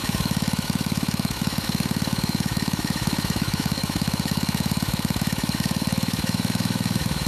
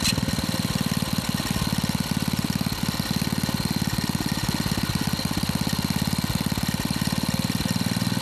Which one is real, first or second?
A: second